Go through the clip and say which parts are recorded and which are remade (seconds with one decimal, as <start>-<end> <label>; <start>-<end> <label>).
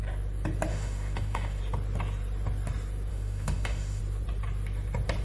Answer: 0.0-0.7 recorded; 0.7-1.6 remade; 1.6-3.1 recorded; 3.1-4.0 remade; 4.0-5.2 recorded